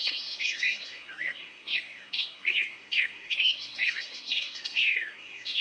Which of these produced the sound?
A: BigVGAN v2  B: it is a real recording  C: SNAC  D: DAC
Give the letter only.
C